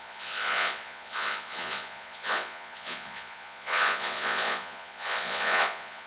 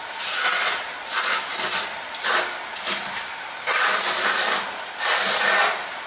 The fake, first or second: first